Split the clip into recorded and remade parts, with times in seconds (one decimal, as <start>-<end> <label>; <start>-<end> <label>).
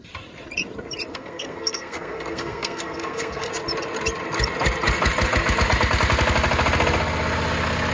0.0-1.1 recorded; 1.1-3.5 remade; 3.5-7.9 recorded